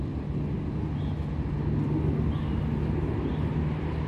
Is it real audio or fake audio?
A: real